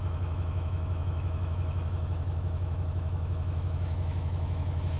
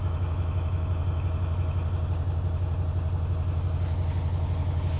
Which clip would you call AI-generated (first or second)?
first